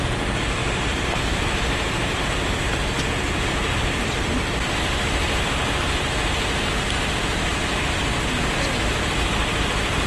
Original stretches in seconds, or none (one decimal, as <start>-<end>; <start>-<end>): 0.0-0.6; 2.7-7.5; 8.0-10.1

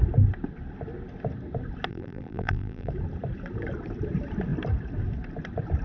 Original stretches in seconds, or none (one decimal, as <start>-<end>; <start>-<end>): 0.0-1.9; 2.9-5.8

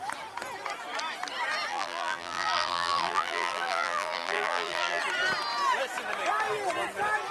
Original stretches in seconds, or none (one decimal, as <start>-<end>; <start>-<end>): 0.0-1.7; 5.0-7.3

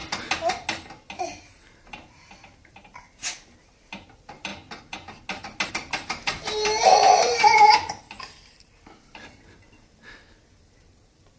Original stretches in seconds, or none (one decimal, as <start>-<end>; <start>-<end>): 0.0-1.4; 2.9-3.6; 4.5-5.7

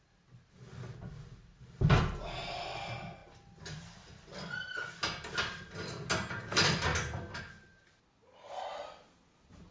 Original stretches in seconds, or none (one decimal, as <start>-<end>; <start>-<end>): 0.0-9.7

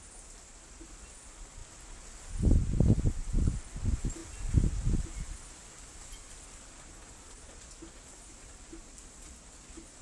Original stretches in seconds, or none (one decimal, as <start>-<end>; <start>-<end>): 0.0-10.0

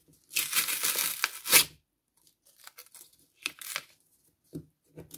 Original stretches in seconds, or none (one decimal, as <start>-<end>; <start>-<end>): 0.0-5.2